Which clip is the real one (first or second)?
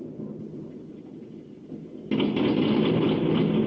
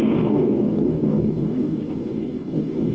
first